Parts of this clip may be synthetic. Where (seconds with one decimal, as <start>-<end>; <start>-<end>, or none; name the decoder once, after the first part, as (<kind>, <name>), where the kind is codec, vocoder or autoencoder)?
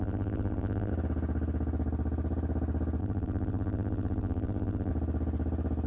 0.0-0.9 (vocoder, BigVGAN v2); 3.0-4.9